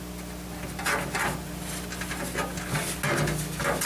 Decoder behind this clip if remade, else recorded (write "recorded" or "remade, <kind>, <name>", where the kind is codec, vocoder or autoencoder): recorded